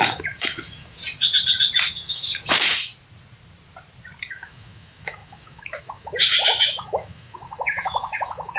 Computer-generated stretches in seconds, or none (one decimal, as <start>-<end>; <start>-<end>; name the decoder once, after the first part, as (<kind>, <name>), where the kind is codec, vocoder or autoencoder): 0.0-1.0 (autoencoder, DAC-VAE); 1.9-2.9; 4.3-8.6